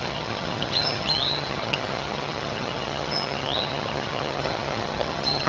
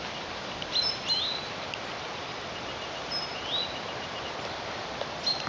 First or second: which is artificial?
first